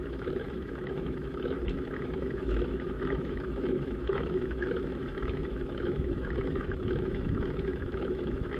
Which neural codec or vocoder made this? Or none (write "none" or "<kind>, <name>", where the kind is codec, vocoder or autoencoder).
autoencoder, DAC-VAE